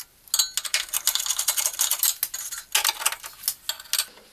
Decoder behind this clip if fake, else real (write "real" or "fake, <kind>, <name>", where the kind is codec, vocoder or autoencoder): real